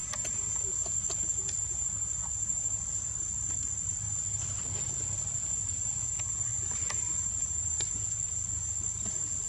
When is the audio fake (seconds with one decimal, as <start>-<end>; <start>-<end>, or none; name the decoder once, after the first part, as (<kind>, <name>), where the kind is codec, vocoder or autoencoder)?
none